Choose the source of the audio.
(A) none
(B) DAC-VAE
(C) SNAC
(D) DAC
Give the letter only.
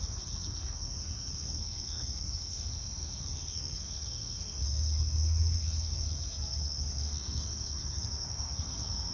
C